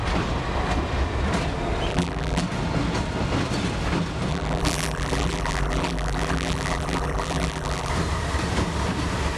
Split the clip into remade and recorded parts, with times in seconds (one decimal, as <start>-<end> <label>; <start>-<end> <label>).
0.0-1.9 recorded; 1.9-2.4 remade; 2.4-4.3 recorded; 4.3-7.9 remade; 7.9-9.4 recorded